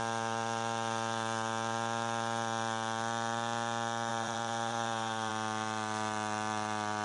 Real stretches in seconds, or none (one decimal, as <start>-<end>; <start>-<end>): 0.0-4.1; 5.3-7.0

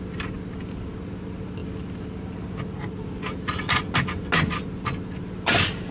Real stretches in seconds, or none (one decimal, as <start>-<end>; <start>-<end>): 0.0-5.9

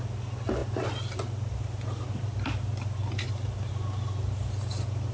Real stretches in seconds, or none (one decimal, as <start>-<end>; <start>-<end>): 0.0-5.1

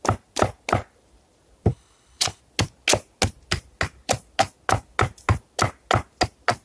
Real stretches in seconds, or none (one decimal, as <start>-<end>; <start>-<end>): 0.0-1.7; 2.4-6.6

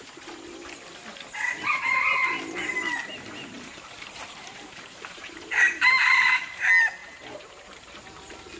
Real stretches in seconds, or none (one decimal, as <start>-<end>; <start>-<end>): 0.0-3.0; 6.1-7.0; 8.0-8.6

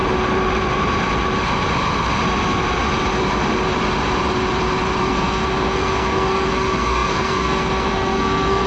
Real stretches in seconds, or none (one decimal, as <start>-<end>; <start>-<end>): 0.0-5.0